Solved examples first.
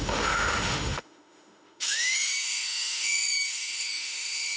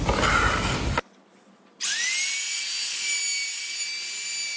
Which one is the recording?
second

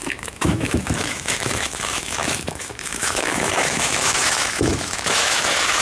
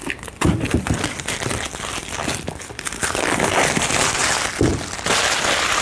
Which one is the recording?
second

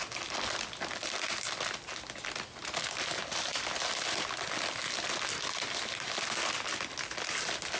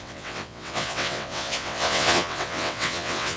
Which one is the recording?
first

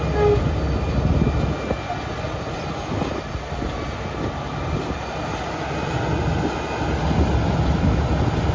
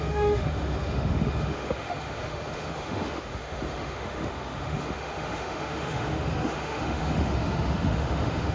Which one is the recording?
first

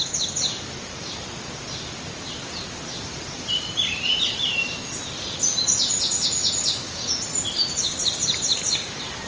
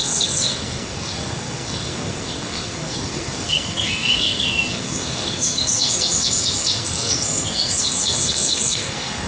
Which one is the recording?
first